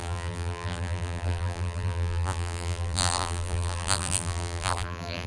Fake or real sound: fake